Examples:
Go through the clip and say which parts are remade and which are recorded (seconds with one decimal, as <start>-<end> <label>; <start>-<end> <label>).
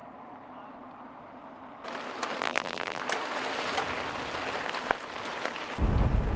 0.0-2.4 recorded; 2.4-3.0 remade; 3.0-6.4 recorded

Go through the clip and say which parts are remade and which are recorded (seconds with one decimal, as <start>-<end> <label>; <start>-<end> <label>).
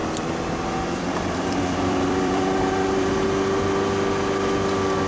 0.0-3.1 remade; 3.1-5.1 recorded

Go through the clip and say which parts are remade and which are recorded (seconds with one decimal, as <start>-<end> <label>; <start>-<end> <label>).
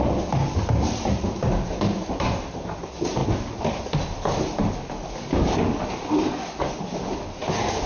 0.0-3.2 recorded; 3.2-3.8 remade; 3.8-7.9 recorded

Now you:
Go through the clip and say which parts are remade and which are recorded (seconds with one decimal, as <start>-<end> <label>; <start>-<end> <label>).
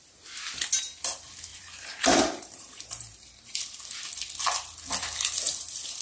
0.0-1.5 recorded; 1.5-4.0 remade; 4.0-6.0 recorded